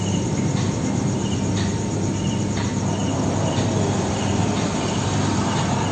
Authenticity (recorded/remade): recorded